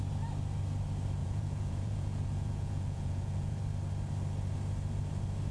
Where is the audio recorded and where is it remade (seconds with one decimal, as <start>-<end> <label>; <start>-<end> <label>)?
0.0-1.2 recorded; 1.2-3.6 remade; 3.6-5.5 recorded